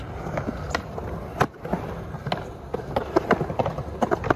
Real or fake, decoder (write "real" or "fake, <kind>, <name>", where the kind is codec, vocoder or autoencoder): real